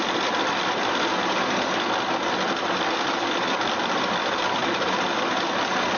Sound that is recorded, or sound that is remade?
recorded